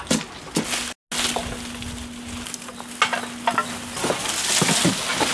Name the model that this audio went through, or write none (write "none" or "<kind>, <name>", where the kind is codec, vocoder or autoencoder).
none